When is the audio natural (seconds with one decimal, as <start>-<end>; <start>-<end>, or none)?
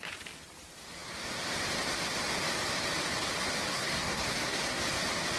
0.0-3.7; 4.8-5.4